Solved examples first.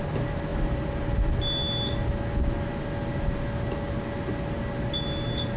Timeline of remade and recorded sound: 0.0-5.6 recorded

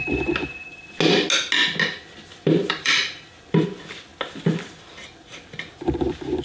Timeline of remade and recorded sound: 0.0-0.7 remade; 0.7-2.0 recorded; 2.0-4.1 remade; 4.1-4.6 recorded; 4.6-6.4 remade